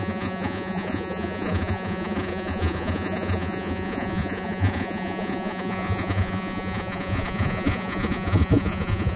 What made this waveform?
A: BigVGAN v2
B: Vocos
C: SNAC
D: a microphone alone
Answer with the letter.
B